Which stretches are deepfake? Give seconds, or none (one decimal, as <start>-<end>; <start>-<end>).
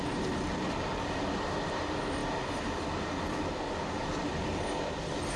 none